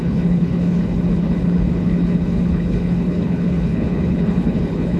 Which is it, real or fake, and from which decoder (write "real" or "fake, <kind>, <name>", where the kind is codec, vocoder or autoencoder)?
fake, codec, HILCodec